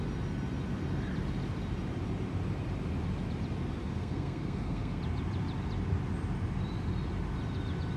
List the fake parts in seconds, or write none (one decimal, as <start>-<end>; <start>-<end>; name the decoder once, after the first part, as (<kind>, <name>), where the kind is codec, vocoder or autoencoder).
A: 3.8-5.0 (codec, SNAC)